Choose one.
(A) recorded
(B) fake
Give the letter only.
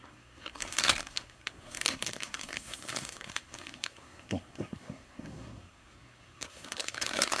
B